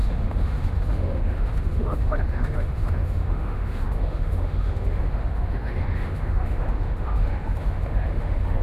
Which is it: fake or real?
fake